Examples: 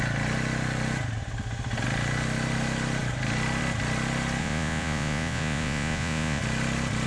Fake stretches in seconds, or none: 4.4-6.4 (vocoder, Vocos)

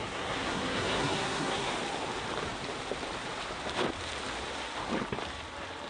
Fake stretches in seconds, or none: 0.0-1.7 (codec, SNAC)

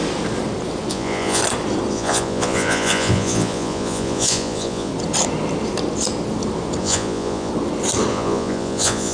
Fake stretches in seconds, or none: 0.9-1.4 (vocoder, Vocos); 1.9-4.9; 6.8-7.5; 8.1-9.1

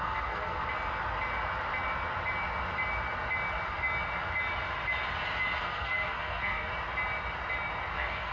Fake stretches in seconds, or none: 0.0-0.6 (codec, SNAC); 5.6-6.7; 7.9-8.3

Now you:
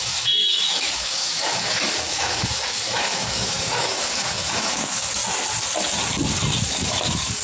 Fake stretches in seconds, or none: 0.0-5.2 (codec, DAC); 6.7-7.4

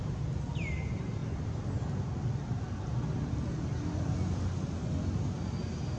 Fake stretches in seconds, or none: none

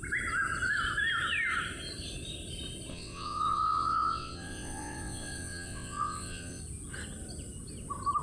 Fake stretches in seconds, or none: 2.9-6.6 (vocoder, WaveNeXt)